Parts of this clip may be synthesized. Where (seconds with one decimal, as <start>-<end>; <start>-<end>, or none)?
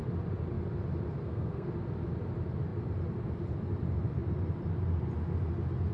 1.2-1.7